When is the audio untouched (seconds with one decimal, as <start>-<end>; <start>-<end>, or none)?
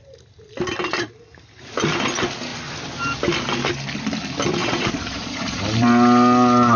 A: 0.0-4.6; 5.6-6.8